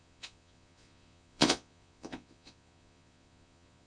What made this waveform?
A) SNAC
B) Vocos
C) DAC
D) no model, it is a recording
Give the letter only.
B